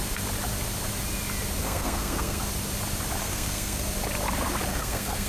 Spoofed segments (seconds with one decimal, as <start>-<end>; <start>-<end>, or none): 1.6-2.4; 3.2-3.8; 4.7-5.3